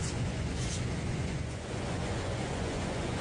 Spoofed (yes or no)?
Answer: yes